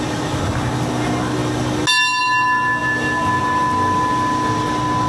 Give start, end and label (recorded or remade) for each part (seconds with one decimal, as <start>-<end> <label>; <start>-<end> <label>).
0.0-5.1 recorded